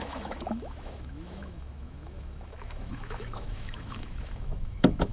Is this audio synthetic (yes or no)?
yes